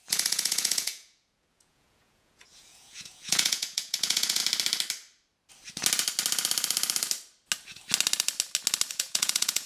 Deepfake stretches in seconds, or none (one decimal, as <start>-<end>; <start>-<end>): 0.0-4.4; 8.9-9.7